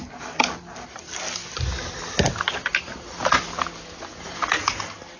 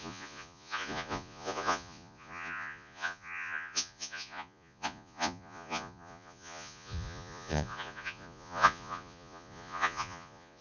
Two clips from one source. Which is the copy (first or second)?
second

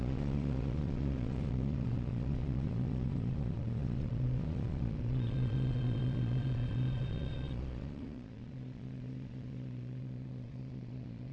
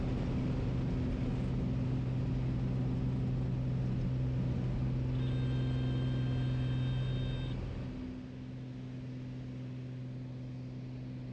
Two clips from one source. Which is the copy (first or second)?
first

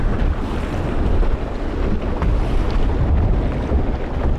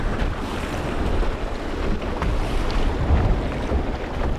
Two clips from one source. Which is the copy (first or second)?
second